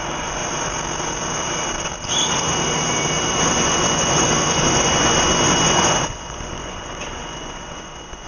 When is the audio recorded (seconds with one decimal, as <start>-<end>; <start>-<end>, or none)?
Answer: 0.4-3.4